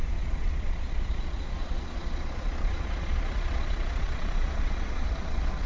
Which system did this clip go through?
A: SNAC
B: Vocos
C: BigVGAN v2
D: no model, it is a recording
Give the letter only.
B